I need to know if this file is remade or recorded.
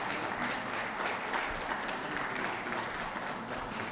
recorded